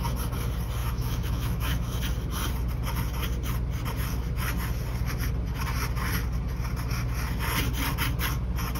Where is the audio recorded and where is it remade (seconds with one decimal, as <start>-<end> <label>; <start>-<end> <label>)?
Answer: 0.0-0.8 recorded; 0.8-2.0 remade; 2.0-8.8 recorded